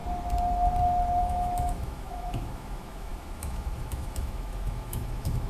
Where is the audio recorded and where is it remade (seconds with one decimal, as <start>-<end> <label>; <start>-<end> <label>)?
0.0-1.2 recorded; 1.2-5.5 remade